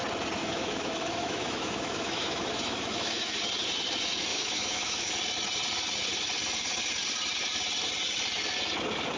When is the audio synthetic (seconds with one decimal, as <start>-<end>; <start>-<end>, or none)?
0.4-3.4; 4.3-5.1